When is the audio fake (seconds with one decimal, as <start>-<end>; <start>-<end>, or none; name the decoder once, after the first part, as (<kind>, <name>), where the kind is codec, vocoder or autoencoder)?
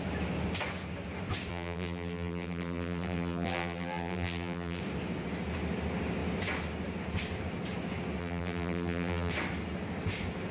1.5-4.8 (vocoder, BigVGAN v2); 8.2-9.3